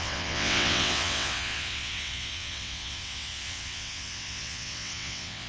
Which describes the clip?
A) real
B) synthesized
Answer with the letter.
B